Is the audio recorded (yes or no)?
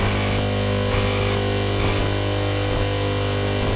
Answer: yes